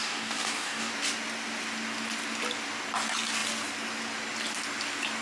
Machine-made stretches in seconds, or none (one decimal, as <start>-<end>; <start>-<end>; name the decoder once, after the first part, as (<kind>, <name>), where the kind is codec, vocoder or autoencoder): 0.0-0.9 (codec, DAC)